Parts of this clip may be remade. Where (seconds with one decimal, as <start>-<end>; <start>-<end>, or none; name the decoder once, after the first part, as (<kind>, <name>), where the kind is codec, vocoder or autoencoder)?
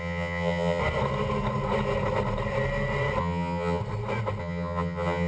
0.0-0.8 (vocoder, HiFi-GAN); 3.2-3.8; 4.4-5.3